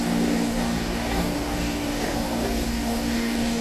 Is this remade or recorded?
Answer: remade